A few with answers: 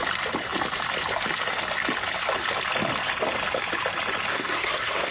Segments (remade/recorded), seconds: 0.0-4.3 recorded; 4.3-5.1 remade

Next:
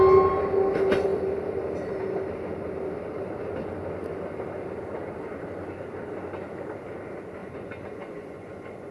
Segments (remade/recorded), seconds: 0.0-7.4 recorded; 7.4-8.9 remade

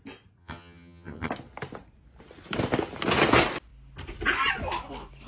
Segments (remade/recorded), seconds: 0.0-0.4 recorded; 0.4-1.3 remade; 1.3-5.3 recorded

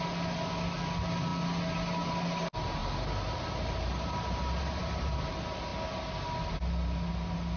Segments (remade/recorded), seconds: 0.0-2.8 recorded; 2.8-5.3 remade; 5.3-7.6 recorded

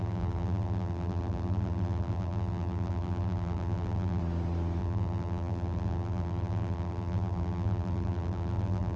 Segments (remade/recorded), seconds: 0.0-4.2 remade; 4.2-4.8 recorded; 4.8-9.0 remade

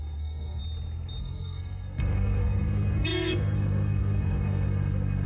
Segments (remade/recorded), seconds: 0.0-0.6 remade; 0.6-1.2 recorded; 1.2-5.3 remade

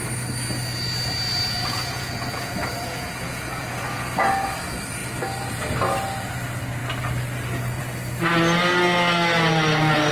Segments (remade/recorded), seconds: 0.0-1.6 recorded; 1.6-4.2 remade; 4.2-10.1 recorded